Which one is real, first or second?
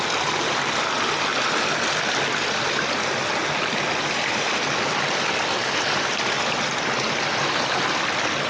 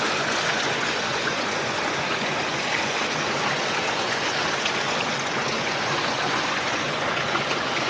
first